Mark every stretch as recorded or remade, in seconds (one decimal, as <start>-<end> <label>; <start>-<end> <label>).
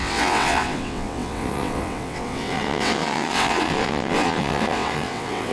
0.0-5.5 remade